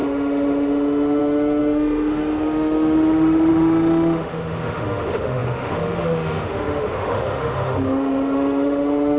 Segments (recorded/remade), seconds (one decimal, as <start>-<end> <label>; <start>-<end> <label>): 0.0-9.2 remade